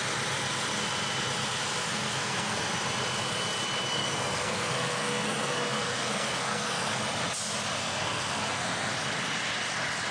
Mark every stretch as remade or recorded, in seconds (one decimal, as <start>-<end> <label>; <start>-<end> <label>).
0.0-1.9 recorded; 1.9-2.7 remade; 2.7-3.9 recorded; 3.9-7.0 remade; 7.0-7.8 recorded; 7.8-8.9 remade; 8.9-10.1 recorded